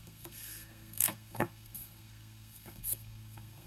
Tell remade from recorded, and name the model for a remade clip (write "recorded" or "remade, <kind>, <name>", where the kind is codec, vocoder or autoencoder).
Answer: remade, codec, SNAC